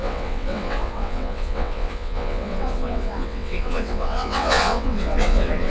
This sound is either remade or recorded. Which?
remade